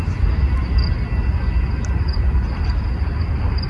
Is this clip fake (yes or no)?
no